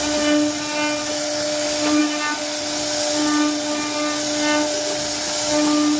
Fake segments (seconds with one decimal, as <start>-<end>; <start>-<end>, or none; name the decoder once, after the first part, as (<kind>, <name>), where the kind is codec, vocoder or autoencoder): none